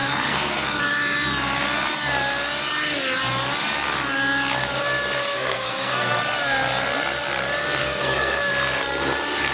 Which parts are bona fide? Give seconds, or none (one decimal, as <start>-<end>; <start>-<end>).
0.8-5.2; 6.2-7.8; 8.5-9.5